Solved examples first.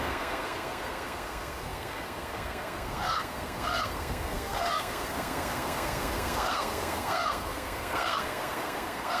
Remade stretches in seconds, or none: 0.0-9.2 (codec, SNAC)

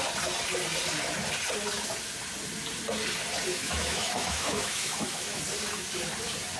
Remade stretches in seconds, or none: 3.5-5.4 (autoencoder, DAC-VAE)

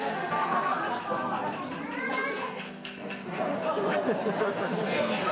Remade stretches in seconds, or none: 0.0-0.8 (codec, SNAC); 2.3-3.5; 4.4-5.3

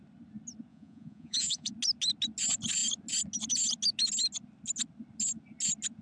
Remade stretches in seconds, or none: 0.7-1.7 (vocoder, Vocos)

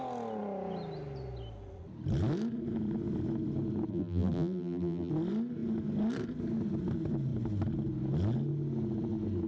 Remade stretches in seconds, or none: 3.9-5.1 (vocoder, BigVGAN v2)

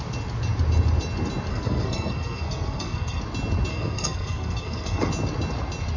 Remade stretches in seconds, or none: 1.5-3.2 (codec, SNAC); 3.7-5.1